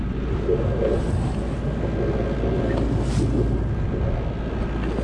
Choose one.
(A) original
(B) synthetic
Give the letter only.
A